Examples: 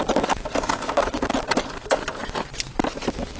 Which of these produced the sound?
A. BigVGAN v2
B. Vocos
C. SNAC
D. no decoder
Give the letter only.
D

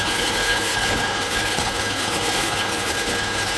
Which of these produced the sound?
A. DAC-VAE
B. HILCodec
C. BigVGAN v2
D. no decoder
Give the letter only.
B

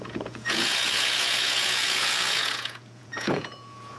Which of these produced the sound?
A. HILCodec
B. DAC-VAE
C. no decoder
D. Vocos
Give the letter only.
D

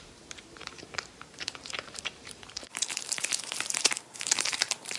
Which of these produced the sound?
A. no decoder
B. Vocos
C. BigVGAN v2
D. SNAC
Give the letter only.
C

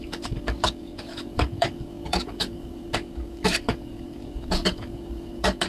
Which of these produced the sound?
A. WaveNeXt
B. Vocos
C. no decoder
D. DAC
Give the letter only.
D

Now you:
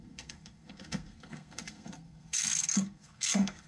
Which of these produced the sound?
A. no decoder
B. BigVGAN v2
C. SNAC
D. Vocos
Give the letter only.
C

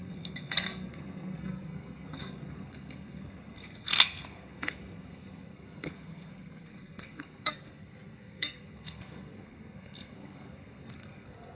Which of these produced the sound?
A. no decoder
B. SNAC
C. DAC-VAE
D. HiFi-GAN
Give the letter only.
B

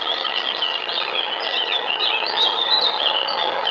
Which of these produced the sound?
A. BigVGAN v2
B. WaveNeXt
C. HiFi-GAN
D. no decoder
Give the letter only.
C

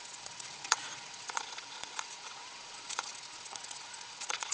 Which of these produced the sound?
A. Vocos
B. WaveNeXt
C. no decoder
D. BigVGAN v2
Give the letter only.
A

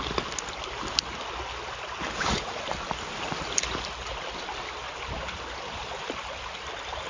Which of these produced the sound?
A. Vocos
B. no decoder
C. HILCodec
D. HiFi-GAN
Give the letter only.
B